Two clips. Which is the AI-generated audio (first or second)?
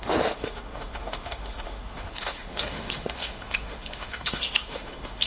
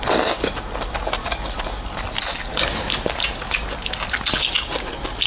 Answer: first